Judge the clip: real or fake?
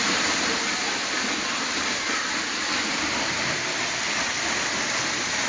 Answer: real